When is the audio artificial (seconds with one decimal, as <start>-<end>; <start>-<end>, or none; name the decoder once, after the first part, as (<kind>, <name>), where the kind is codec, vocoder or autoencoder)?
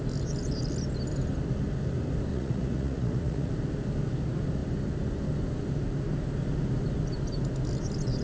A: 2.3-3.5 (vocoder, Vocos)